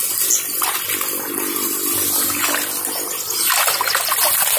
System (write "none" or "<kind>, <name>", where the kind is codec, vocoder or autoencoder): none